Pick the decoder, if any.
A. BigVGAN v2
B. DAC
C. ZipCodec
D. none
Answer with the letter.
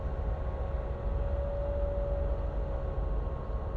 D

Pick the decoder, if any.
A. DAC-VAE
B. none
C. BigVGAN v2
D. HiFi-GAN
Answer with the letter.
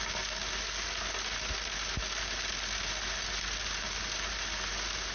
B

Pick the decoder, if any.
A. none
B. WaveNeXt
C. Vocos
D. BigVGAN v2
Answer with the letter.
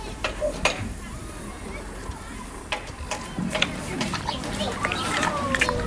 D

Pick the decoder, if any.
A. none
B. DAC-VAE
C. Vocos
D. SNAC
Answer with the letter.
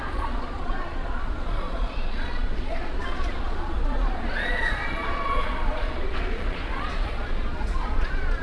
C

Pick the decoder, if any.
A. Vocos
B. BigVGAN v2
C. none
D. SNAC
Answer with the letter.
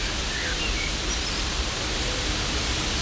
C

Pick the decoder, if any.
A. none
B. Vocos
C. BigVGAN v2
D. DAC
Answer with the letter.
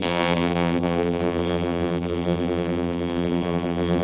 C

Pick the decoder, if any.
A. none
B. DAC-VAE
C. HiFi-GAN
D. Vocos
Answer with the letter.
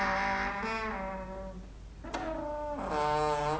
A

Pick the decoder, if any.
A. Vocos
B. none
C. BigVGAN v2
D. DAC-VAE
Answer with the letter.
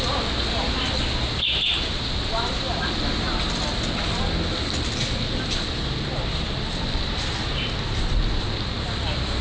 B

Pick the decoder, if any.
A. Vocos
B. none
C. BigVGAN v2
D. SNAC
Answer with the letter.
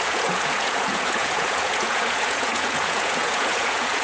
A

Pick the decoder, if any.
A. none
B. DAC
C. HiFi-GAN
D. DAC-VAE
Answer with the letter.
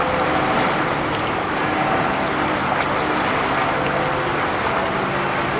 A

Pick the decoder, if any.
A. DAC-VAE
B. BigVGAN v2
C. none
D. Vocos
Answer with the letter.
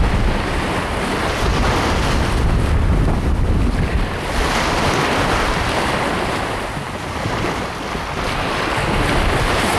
C